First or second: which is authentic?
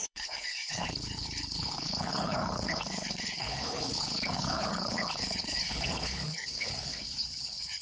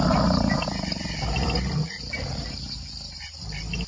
second